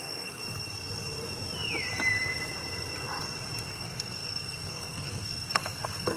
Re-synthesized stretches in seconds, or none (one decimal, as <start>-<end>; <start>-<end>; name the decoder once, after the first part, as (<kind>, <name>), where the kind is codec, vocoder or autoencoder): 0.0-0.4 (codec, SNAC); 3.7-6.2